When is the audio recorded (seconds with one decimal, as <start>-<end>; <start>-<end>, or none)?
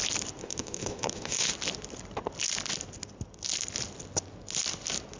0.0-0.4; 1.5-5.2